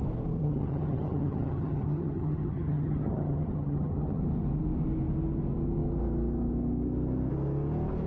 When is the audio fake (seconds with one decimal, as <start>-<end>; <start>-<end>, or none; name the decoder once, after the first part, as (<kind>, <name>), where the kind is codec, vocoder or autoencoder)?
0.4-4.2 (vocoder, HiFi-GAN)

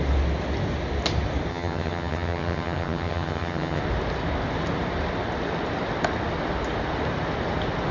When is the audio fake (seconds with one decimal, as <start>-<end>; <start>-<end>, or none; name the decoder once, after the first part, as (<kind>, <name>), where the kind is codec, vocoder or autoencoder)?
1.5-3.8 (vocoder, HiFi-GAN)